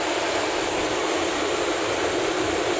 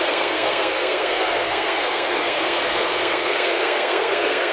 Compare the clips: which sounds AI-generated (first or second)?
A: second